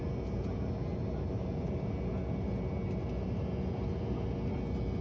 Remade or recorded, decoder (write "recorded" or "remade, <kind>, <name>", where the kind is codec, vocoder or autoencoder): recorded